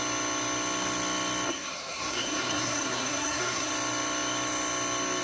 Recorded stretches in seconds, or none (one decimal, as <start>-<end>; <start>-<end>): 0.0-1.5; 3.7-5.2